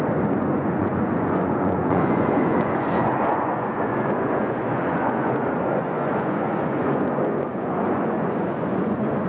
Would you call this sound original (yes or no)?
no